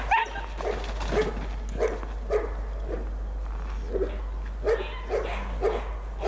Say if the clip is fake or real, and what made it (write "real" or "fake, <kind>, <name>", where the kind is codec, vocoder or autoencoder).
real